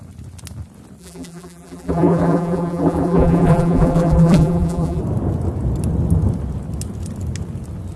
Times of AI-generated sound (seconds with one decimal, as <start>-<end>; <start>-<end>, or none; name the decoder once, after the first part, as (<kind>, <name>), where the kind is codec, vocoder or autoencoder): 1.0-5.0 (vocoder, BigVGAN v2)

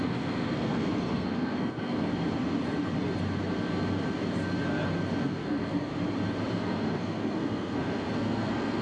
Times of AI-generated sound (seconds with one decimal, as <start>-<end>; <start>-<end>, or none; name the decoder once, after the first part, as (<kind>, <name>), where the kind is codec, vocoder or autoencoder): 0.0-2.1 (codec, SNAC); 5.2-5.9; 6.5-8.8

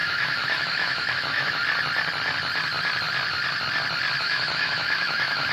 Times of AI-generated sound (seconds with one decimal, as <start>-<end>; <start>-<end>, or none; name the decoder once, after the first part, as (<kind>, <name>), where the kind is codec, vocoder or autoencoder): 0.0-1.6 (autoencoder, DAC-VAE); 4.2-5.5

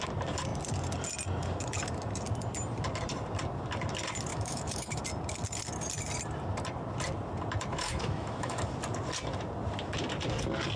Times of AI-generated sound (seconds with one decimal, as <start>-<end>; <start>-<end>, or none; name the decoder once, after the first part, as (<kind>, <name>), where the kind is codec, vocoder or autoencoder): 4.3-5.0 (autoencoder, DAC-VAE); 7.7-8.7

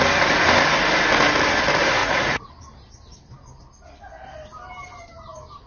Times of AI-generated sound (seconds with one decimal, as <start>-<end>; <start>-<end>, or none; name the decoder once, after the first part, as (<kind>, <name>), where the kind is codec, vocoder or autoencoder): 2.0-2.5 (vocoder, Vocos)

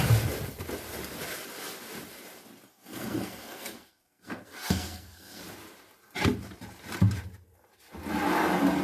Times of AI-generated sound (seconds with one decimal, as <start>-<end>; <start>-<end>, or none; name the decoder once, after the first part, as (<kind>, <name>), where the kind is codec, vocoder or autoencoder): 2.7-5.4 (codec, SNAC)

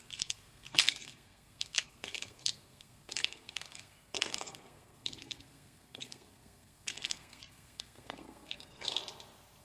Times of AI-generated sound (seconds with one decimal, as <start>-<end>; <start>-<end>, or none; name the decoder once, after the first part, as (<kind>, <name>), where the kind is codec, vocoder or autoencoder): 0.0-9.0 (codec, SNAC)